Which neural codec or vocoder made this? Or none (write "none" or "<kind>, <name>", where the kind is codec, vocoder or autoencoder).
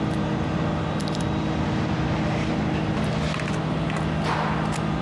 none